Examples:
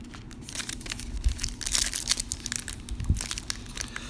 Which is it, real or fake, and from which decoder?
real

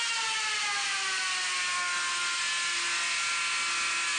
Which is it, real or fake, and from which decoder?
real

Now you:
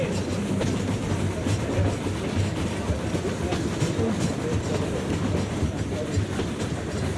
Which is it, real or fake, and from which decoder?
real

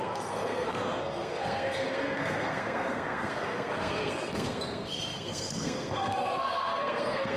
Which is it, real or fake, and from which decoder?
fake, codec, SNAC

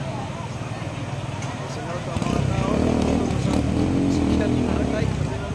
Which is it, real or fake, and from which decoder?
real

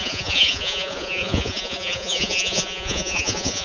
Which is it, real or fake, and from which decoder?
fake, vocoder, Vocos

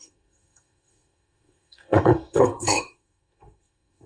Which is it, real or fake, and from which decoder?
fake, codec, SNAC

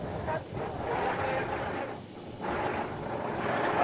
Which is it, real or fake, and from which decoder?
real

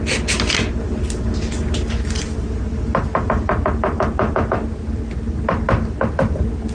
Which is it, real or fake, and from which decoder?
real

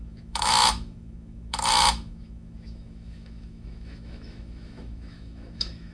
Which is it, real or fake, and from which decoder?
fake, autoencoder, DAC-VAE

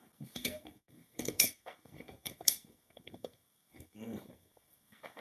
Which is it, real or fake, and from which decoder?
fake, codec, SNAC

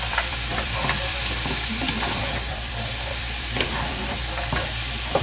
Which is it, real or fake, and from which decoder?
fake, vocoder, BigVGAN v2